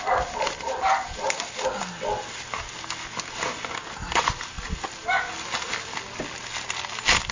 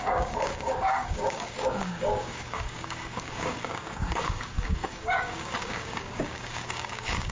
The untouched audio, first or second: first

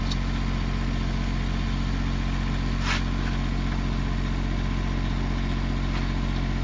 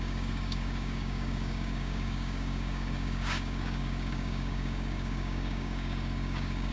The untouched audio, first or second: first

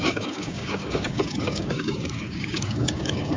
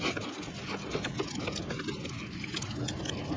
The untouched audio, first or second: second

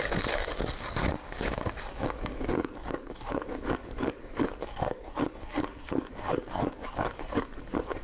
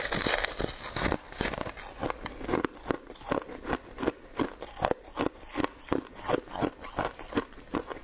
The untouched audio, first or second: second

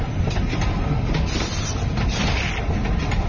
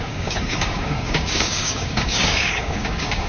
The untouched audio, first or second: first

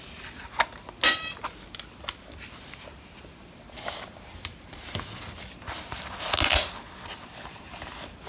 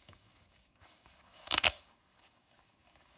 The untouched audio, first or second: first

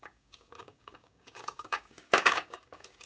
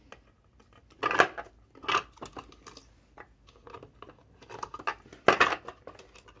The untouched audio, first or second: second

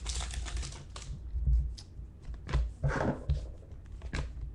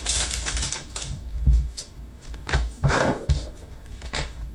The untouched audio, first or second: first